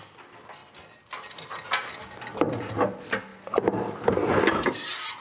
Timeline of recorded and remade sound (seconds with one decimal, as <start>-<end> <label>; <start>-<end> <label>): 0.0-5.2 recorded